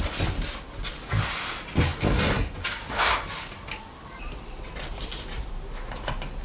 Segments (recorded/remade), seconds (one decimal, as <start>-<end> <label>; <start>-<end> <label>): 0.0-6.4 recorded